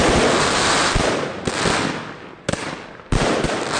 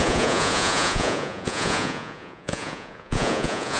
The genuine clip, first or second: first